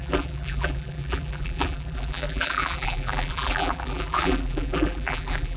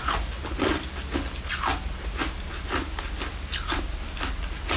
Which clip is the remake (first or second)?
first